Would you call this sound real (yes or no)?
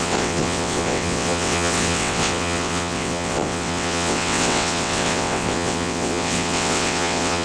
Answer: no